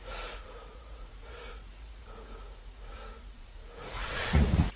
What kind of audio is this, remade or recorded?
remade